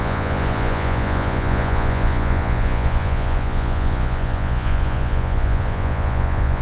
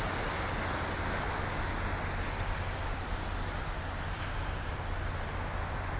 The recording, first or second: second